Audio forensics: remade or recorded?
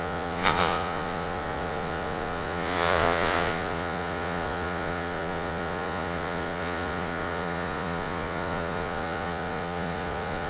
remade